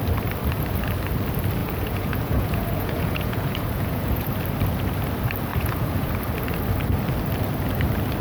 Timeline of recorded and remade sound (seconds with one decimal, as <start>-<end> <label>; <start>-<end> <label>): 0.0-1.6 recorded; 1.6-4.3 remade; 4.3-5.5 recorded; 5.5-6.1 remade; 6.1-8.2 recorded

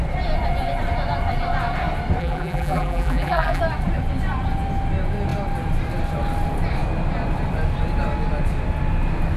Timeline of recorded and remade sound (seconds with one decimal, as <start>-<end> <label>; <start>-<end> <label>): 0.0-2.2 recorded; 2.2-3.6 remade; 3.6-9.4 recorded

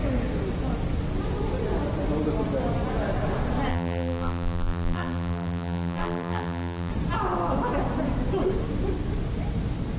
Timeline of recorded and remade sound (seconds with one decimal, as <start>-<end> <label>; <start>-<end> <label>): 0.0-3.7 recorded; 3.7-6.9 remade; 6.9-10.0 recorded

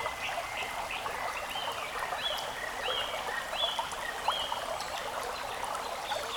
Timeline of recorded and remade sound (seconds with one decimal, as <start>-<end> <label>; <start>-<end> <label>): 0.0-6.4 recorded

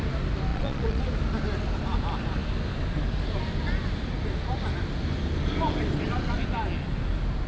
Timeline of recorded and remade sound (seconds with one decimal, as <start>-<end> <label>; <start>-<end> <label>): 0.0-0.5 recorded; 0.5-1.0 remade; 1.0-7.5 recorded

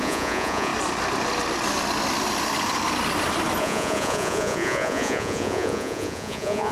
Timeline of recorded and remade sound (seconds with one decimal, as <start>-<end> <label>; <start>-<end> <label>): 0.0-0.7 remade; 0.7-3.6 recorded; 3.6-6.7 remade

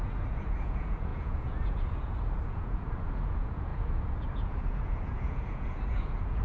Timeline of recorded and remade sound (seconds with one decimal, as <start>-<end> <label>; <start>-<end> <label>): 0.0-6.4 remade